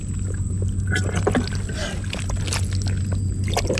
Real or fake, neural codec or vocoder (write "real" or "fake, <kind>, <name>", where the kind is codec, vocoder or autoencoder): real